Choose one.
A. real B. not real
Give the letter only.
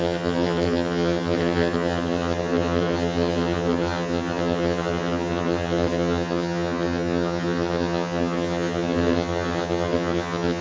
B